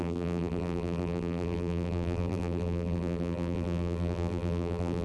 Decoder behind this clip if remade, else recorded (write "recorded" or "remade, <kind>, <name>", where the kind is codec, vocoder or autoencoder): remade, vocoder, BigVGAN v2